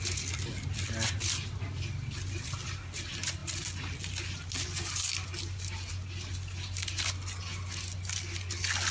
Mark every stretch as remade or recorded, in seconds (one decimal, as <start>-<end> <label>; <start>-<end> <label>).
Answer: 0.0-8.9 recorded